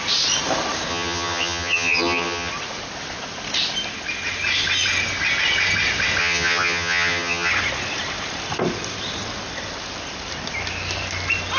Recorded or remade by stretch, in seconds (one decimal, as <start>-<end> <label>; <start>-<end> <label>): 0.0-0.9 recorded; 0.9-2.5 remade; 2.5-6.2 recorded; 6.2-7.5 remade; 7.5-11.6 recorded